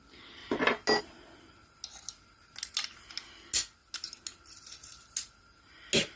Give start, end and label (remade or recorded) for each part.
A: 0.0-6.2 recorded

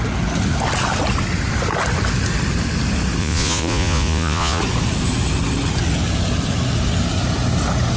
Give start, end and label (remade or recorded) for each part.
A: 0.0-3.2 recorded; 3.2-4.6 remade; 4.6-8.0 recorded

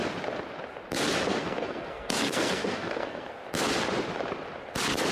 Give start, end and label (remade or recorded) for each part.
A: 0.0-1.3 recorded; 1.3-3.4 remade; 3.4-5.1 recorded

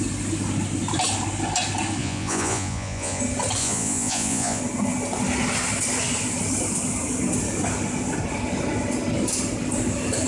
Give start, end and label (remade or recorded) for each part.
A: 0.0-2.0 recorded; 2.0-3.2 remade; 3.2-3.6 recorded; 3.6-4.6 remade; 4.6-10.3 recorded

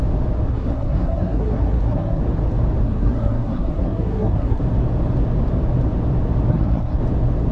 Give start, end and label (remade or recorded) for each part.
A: 0.0-0.5 recorded; 0.5-2.2 remade; 2.2-2.8 recorded; 2.8-4.6 remade; 4.6-6.5 recorded; 6.5-7.0 remade; 7.0-7.5 recorded

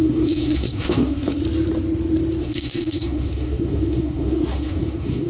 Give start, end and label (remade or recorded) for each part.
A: 0.0-1.4 remade; 1.4-2.4 recorded; 2.4-5.3 remade

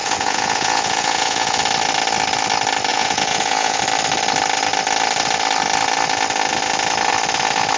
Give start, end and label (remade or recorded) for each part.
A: 0.0-1.6 remade; 1.6-2.9 recorded; 2.9-3.8 remade; 3.8-7.8 recorded